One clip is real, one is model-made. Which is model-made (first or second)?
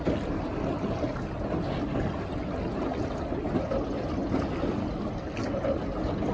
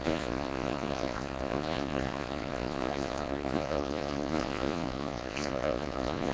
second